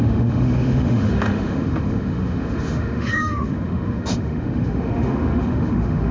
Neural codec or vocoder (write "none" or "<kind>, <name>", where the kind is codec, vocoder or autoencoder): autoencoder, DAC-VAE